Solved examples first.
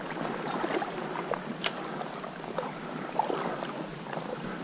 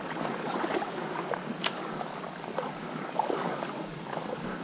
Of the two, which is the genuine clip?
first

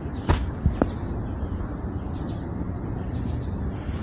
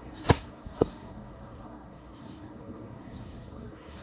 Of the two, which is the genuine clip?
first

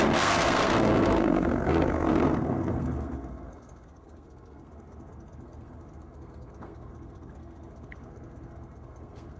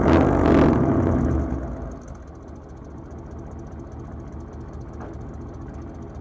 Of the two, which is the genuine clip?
second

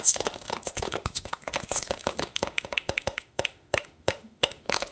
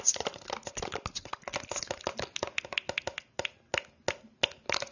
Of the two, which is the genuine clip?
second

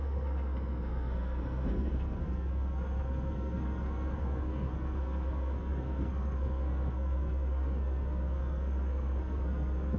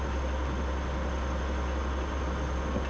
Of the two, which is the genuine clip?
second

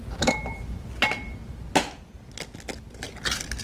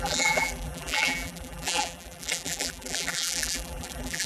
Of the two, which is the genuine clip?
first